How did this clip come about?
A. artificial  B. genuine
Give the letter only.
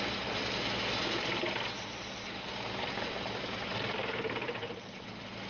B